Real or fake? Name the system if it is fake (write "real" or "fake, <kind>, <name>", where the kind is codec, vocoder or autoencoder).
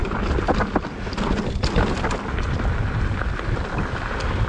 real